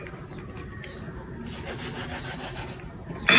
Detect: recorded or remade recorded